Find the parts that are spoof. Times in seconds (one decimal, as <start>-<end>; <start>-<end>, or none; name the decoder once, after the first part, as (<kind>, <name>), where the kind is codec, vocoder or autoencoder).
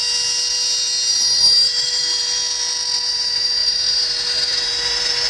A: 1.1-2.4 (vocoder, BigVGAN v2); 3.1-5.3